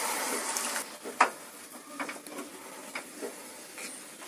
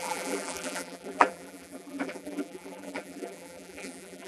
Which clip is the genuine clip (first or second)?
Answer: first